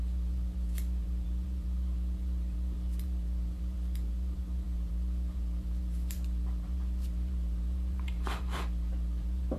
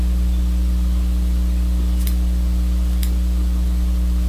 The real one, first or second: second